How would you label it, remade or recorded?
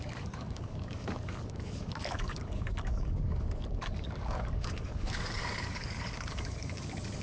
remade